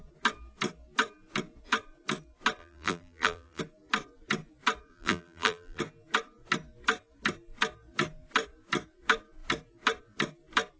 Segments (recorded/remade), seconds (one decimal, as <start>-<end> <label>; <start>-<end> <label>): 0.0-2.6 recorded; 2.6-3.6 remade; 3.6-4.9 recorded; 4.9-5.8 remade; 5.8-10.8 recorded